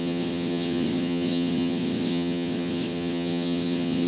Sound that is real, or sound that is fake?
fake